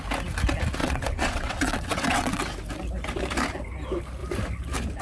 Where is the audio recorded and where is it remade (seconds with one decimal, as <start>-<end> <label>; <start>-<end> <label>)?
0.0-0.8 recorded; 0.8-2.4 remade; 2.4-5.0 recorded